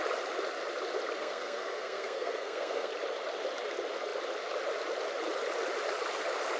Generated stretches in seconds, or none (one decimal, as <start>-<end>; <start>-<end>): 1.2-2.9